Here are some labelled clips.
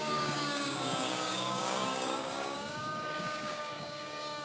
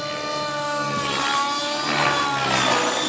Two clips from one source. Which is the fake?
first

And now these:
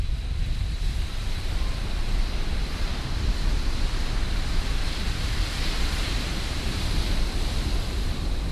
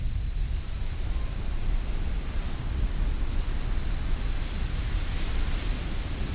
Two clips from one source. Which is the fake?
first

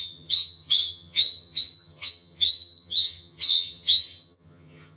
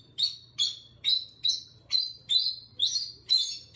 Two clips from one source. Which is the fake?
first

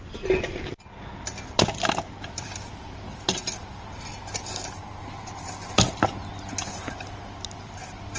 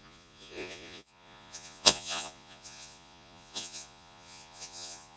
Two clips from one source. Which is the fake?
second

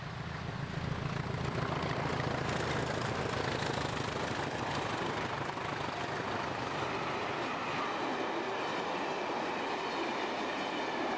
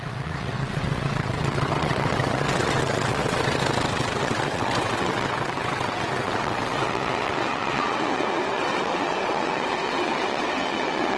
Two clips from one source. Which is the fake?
second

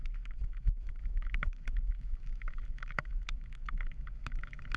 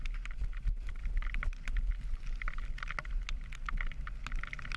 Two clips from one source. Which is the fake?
first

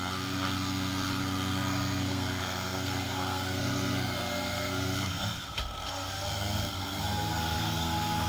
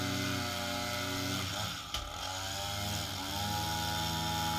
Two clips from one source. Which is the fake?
first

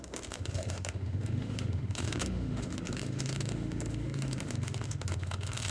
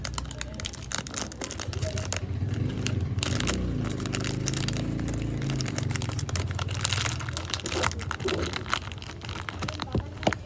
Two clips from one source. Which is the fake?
first